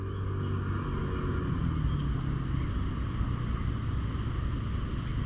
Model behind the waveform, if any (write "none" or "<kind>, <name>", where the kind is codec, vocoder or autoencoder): none